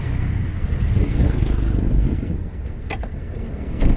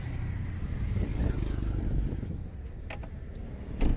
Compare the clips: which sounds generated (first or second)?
first